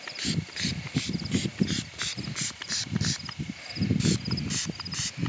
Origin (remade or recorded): recorded